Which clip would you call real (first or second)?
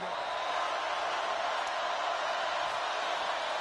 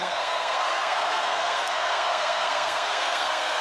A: first